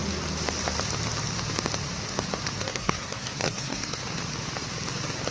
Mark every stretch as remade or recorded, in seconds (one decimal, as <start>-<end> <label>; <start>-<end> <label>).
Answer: 0.0-2.7 recorded; 2.7-4.0 remade; 4.0-5.3 recorded